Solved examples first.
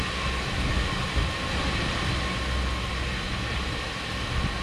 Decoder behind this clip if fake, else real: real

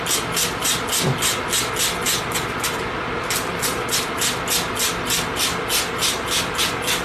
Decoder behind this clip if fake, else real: real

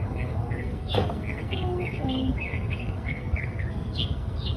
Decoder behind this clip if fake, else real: fake, codec, SNAC